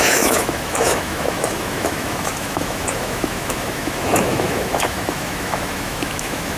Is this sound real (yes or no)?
no